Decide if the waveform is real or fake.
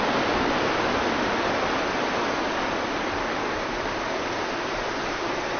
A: real